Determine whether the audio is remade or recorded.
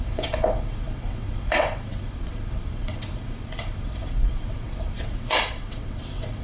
remade